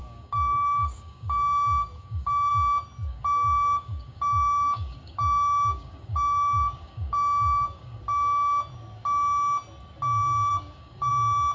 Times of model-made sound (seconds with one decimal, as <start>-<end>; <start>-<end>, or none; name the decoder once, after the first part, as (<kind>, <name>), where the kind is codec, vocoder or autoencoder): 0.0-2.5 (codec, DAC); 3.1-8.0; 10.5-11.1

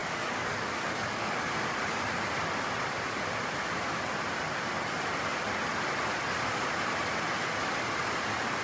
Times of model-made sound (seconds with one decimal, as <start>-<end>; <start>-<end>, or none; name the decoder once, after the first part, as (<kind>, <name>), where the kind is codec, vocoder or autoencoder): 0.0-1.4 (codec, DAC)

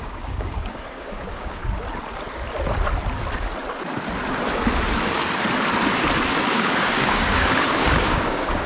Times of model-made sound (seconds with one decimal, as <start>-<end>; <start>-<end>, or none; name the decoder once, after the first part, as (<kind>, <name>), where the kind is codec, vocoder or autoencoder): 0.0-1.6 (codec, DAC); 6.5-8.7

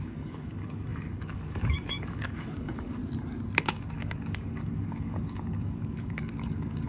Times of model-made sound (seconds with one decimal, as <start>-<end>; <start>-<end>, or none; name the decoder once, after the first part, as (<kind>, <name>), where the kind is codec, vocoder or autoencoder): 0.0-3.0 (codec, DAC); 3.6-6.9

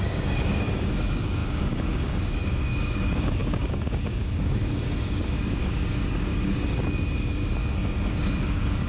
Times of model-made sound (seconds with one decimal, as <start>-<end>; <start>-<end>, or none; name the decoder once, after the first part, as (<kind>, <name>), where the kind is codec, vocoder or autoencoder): 0.0-7.6 (codec, DAC); 8.1-8.9

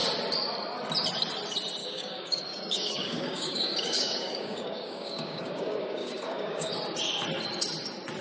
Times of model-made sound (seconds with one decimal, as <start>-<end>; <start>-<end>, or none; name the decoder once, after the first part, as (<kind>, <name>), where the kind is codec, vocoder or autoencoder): 1.8-6.7 (codec, DAC)